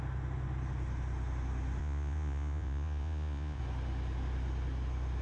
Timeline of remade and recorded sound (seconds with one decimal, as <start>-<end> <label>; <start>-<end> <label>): 0.0-1.8 recorded; 1.8-3.6 remade; 3.6-5.2 recorded